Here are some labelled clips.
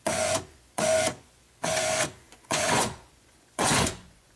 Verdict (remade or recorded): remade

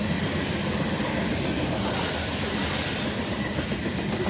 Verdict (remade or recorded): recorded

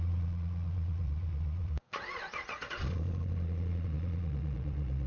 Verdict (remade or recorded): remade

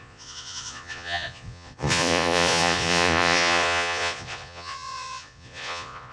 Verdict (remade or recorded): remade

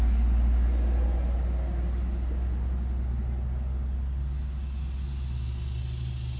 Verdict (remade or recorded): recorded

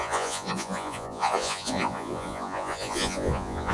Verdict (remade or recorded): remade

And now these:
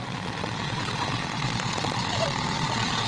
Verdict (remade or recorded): remade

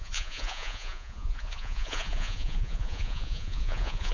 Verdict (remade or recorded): remade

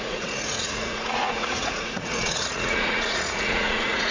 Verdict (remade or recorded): remade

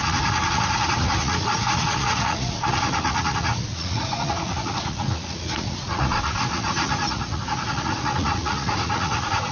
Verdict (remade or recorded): remade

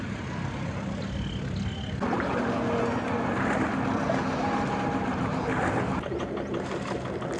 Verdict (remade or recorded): recorded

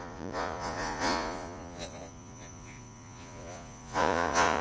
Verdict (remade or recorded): remade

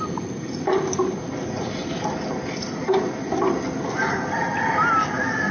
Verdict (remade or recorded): recorded